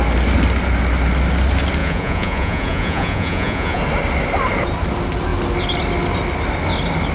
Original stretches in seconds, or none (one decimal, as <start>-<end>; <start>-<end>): 0.0-1.8; 3.8-7.1

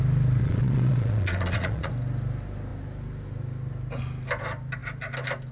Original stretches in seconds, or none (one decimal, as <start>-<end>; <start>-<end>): 0.0-0.4; 1.9-5.5

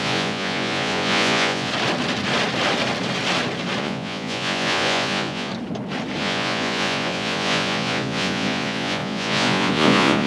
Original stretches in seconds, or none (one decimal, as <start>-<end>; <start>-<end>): 1.7-3.8; 5.5-6.2